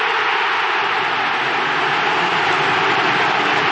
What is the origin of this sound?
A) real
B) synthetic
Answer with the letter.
A